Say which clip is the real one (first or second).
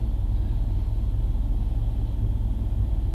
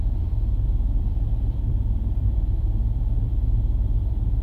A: first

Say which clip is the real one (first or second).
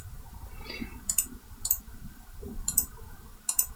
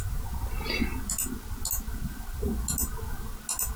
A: second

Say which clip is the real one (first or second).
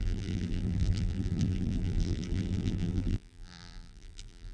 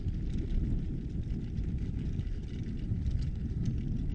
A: second